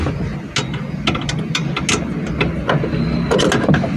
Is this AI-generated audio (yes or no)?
no